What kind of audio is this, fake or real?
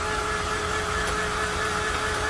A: real